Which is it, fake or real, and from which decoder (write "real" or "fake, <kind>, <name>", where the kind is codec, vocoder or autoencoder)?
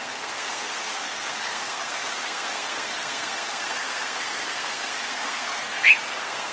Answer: fake, codec, SNAC